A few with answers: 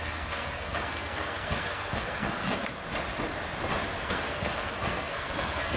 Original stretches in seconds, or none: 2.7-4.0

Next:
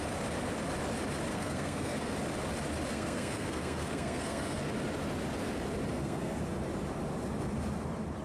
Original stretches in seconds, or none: 0.0-1.3; 2.1-2.9; 4.6-5.9; 6.4-8.2